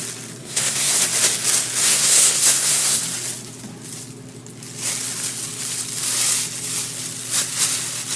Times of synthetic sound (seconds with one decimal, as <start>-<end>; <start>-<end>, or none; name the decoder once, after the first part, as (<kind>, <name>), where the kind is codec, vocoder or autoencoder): 0.4-1.0 (codec, SNAC); 1.8-3.0

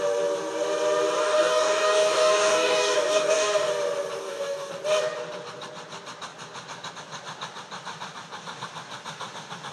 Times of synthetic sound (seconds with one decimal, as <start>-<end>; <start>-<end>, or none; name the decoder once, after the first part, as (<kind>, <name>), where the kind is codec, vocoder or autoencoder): 1.2-3.7 (codec, DAC); 4.2-4.7

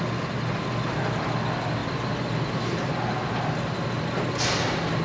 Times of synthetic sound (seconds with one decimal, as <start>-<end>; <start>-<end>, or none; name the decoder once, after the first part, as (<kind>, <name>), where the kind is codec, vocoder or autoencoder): none

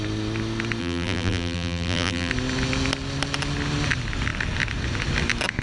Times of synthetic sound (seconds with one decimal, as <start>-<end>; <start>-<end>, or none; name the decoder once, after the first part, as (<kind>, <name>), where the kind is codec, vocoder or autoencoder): 0.8-2.3 (vocoder, BigVGAN v2)

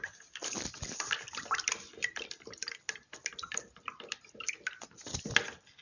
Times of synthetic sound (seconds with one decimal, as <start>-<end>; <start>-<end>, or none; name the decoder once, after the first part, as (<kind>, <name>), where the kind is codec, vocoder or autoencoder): none

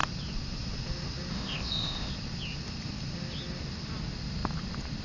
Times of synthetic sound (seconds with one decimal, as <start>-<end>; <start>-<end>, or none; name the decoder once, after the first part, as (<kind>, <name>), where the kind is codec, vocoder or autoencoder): 1.3-2.1 (codec, ZipCodec)

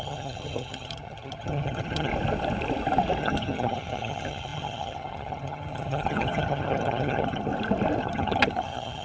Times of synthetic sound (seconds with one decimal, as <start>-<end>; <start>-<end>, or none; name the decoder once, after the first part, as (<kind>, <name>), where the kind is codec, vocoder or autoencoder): 0.0-2.1 (vocoder, HiFi-GAN); 3.2-7.5; 8.0-9.0

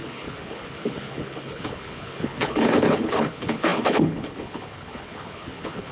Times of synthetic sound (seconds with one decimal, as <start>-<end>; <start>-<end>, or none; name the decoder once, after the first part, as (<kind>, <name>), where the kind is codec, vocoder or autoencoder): 0.0-5.9 (codec, HILCodec)